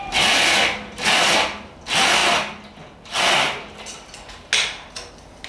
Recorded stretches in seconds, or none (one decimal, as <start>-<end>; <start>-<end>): 0.0-5.5